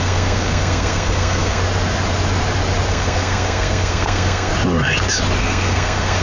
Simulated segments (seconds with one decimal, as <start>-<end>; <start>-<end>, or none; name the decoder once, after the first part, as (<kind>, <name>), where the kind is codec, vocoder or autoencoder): 0.0-1.6 (codec, SNAC); 2.9-4.5; 5.4-6.2